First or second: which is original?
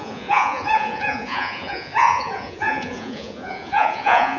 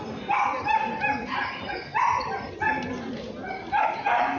second